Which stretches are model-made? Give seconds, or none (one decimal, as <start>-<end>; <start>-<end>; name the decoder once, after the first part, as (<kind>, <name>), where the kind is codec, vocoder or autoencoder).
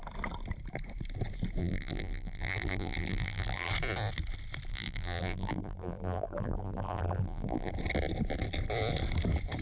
1.6-3.7 (vocoder, BigVGAN v2); 4.7-7.7